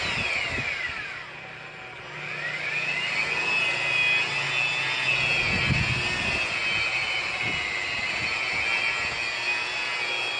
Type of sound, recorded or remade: recorded